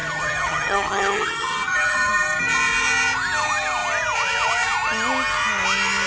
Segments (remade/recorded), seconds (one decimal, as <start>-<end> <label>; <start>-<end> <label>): 0.0-2.1 remade; 2.1-6.1 recorded